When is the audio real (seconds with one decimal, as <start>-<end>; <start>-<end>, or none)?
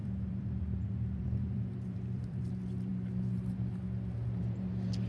2.5-5.1